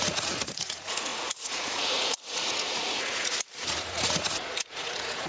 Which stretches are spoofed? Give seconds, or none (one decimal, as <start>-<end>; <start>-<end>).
0.0-5.3

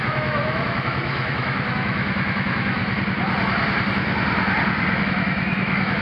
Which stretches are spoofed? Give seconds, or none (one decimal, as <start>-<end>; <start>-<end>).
0.0-2.8; 5.0-6.0

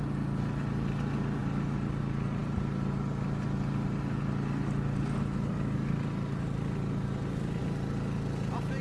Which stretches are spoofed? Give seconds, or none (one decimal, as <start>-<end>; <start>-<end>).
none

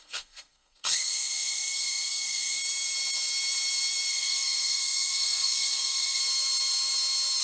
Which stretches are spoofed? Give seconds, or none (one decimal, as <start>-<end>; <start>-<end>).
0.0-2.6; 4.1-6.2

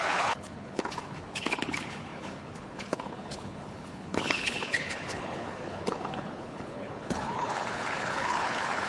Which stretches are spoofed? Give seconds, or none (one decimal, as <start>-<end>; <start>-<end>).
0.0-8.9

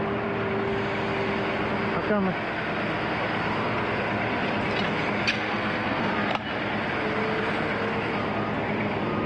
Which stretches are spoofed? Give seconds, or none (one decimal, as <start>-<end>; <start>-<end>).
5.3-6.1